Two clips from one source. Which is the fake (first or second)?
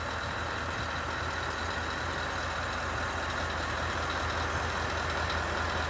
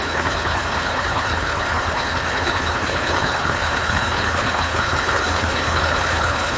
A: second